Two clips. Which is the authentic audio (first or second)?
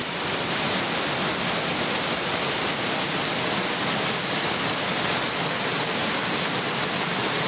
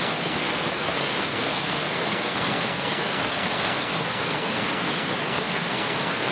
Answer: first